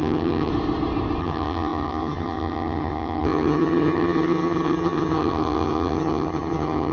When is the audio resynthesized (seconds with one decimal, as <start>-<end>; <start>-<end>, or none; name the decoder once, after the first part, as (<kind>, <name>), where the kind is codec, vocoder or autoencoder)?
0.0-0.5 (vocoder, HiFi-GAN); 1.2-6.9